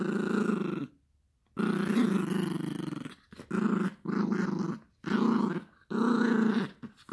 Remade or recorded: recorded